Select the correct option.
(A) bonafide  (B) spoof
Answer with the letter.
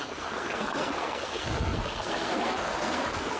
B